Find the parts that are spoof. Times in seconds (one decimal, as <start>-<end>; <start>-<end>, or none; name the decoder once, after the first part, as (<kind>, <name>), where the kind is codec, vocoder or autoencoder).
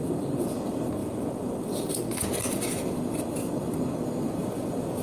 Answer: 4.4-5.0 (vocoder, BigVGAN v2)